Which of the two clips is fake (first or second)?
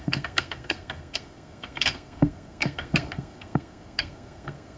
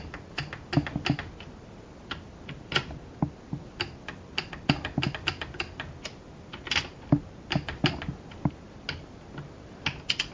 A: first